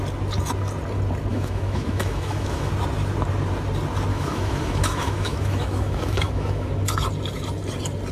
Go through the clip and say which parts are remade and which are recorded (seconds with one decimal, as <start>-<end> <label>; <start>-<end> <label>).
0.0-1.3 recorded; 1.3-2.7 remade; 2.7-4.1 recorded; 4.1-6.7 remade; 6.7-8.1 recorded